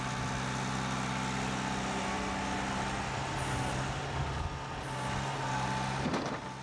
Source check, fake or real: real